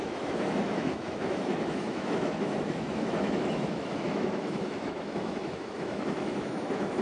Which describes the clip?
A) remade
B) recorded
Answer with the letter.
A